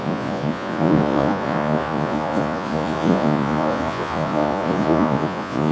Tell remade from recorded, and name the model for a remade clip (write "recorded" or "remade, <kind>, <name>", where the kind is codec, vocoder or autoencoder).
remade, vocoder, Vocos